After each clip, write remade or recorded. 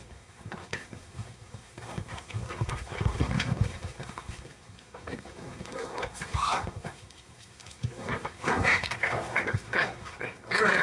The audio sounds remade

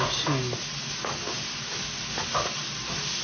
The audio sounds recorded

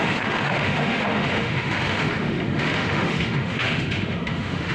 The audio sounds remade